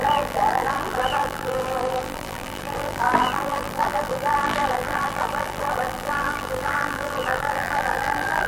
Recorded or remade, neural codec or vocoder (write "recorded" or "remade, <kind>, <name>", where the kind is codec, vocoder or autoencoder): remade, vocoder, BigVGAN v2